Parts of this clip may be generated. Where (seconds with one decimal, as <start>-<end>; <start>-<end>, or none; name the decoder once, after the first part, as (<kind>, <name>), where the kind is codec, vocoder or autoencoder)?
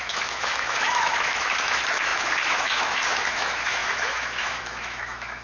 0.0-5.4 (autoencoder, DAC-VAE)